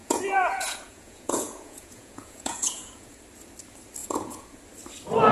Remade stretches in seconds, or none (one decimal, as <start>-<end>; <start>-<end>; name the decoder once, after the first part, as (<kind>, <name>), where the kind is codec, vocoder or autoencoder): 0.0-3.2 (vocoder, Vocos); 4.0-4.6

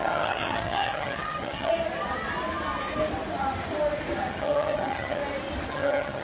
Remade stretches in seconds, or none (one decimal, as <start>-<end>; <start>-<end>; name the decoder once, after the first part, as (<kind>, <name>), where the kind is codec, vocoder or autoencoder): 0.0-1.7 (vocoder, HiFi-GAN); 4.3-5.2; 5.7-6.2

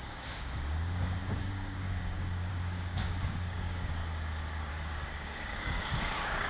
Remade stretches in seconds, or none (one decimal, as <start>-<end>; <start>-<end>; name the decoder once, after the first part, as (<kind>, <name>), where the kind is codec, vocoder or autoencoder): 0.0-4.0 (codec, DAC); 4.7-6.5

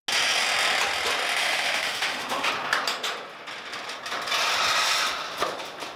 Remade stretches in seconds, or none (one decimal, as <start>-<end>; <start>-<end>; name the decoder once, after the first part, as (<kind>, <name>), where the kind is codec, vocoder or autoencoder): 1.4-2.5 (autoencoder, DAC-VAE)

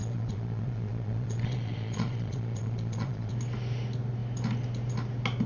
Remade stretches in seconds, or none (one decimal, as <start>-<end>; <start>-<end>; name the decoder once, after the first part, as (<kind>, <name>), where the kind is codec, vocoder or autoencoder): 0.0-3.3 (vocoder, Vocos)

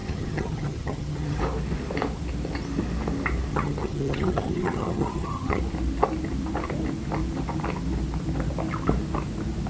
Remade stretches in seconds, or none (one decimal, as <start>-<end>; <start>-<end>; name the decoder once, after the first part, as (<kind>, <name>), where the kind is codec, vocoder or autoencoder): 0.0-1.4 (vocoder, HiFi-GAN); 3.5-5.6